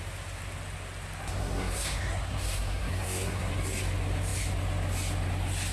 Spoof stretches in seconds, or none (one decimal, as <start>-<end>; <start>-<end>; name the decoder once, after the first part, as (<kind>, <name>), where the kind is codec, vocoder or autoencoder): 1.4-3.5 (codec, SNAC)